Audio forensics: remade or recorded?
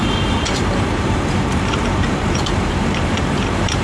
remade